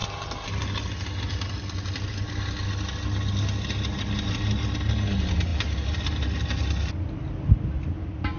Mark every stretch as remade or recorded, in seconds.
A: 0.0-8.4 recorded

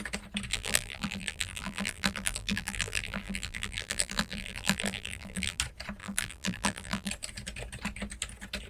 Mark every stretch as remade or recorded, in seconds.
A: 0.0-0.5 recorded; 0.5-5.6 remade; 5.6-6.0 recorded; 6.0-7.1 remade; 7.1-8.7 recorded

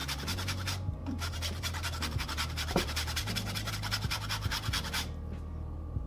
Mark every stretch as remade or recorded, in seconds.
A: 0.0-3.7 remade; 3.7-6.1 recorded

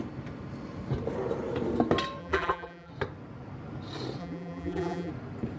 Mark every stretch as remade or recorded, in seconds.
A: 0.0-2.2 recorded; 2.2-2.9 remade; 2.9-4.2 recorded; 4.2-5.1 remade; 5.1-5.6 recorded

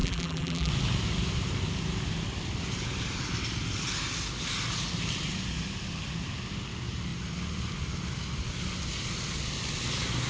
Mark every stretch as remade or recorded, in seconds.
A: 0.0-0.7 remade; 0.7-10.3 recorded

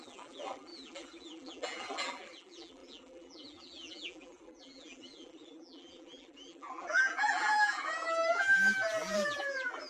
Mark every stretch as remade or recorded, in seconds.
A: 0.0-9.9 remade

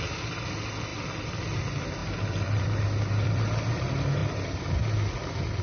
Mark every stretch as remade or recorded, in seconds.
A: 0.0-0.9 recorded; 0.9-1.6 remade; 1.6-2.0 recorded; 2.0-3.4 remade; 3.4-4.2 recorded; 4.2-4.7 remade; 4.7-5.6 recorded